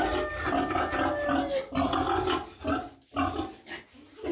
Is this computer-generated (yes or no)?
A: no